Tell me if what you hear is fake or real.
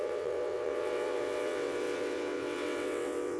fake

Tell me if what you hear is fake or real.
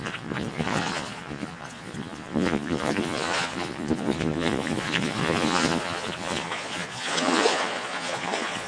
fake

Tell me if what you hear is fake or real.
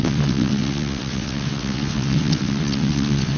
fake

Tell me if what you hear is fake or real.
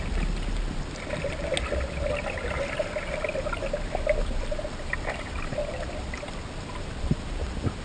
real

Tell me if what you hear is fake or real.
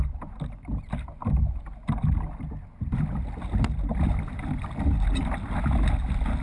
real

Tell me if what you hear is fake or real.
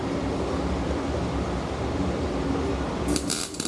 fake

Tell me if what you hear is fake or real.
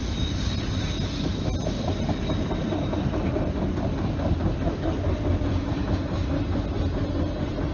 real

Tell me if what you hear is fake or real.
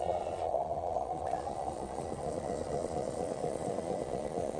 fake